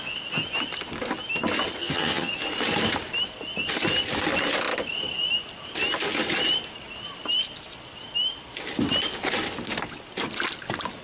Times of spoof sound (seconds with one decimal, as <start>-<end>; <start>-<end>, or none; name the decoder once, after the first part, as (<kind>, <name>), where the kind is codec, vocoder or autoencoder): 1.8-2.3 (vocoder, HiFi-GAN)